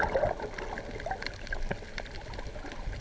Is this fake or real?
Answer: real